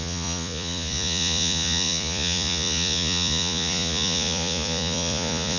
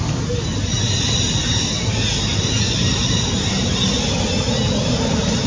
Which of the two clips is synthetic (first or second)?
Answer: first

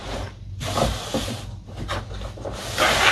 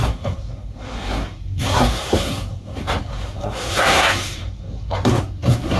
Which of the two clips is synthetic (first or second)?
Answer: second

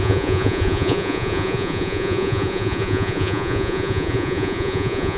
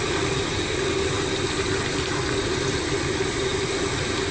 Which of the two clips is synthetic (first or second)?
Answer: first